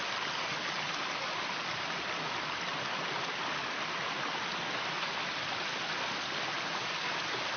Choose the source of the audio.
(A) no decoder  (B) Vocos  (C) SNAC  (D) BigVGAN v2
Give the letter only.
A